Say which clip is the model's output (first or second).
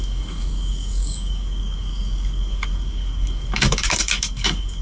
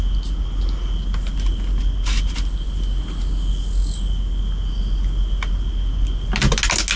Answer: first